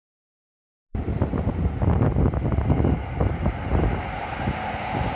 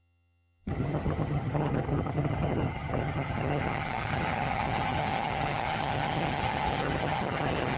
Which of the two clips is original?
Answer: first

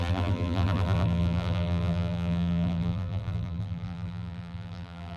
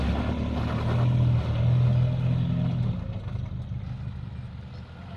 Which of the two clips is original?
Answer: second